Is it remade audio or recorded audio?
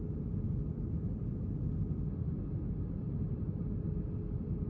recorded